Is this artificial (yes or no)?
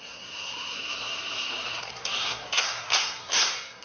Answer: yes